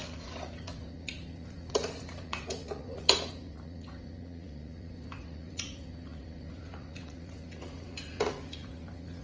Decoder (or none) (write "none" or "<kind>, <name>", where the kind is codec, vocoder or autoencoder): vocoder, Vocos